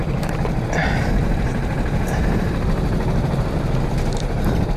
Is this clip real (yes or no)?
no